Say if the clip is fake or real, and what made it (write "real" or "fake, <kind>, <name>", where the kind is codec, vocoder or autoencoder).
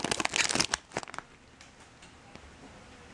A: real